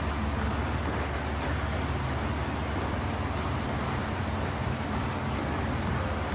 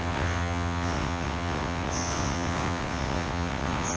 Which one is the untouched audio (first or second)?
first